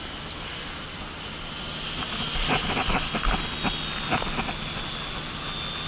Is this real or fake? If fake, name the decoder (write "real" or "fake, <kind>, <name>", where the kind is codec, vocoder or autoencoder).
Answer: real